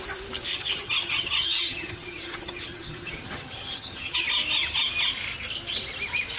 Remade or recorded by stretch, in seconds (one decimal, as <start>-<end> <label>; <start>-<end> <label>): 0.0-0.5 recorded; 0.5-4.3 remade; 4.3-6.4 recorded